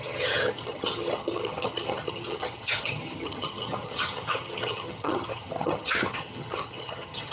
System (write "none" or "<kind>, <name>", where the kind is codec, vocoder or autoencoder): vocoder, HiFi-GAN